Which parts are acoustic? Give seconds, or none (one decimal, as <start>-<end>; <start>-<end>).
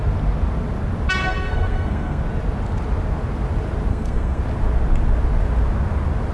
0.0-1.2; 2.2-3.9; 4.4-6.3